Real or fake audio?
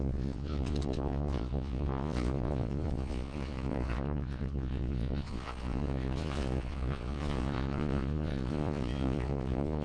fake